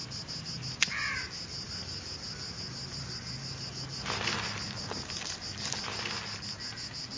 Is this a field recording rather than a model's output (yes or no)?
yes